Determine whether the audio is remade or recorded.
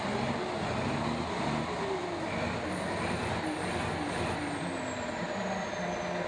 recorded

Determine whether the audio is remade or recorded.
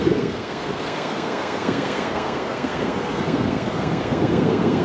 remade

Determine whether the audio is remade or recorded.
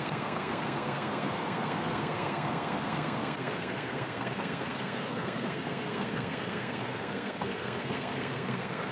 remade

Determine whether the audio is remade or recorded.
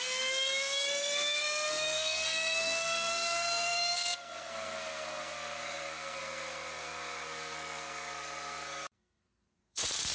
remade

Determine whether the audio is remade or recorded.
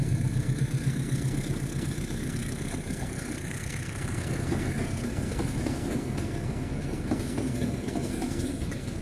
remade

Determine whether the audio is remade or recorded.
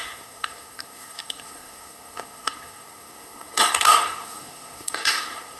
remade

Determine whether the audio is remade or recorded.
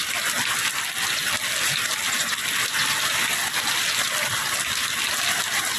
recorded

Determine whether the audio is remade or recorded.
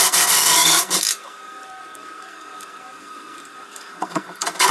remade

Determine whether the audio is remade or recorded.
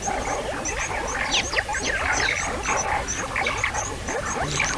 recorded